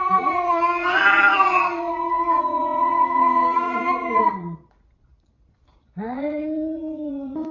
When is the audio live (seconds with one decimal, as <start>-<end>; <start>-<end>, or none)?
none